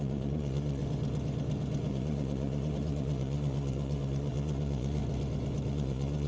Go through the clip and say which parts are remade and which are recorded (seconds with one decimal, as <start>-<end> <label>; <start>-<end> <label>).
0.0-0.8 remade; 0.8-1.9 recorded; 1.9-5.0 remade; 5.0-5.7 recorded; 5.7-6.3 remade